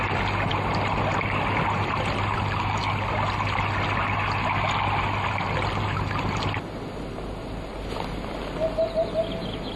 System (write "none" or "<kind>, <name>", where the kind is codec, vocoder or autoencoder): none